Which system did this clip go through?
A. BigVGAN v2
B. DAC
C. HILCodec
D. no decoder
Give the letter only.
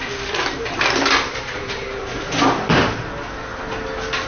D